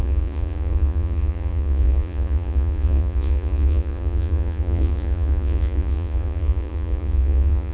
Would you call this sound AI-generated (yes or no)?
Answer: yes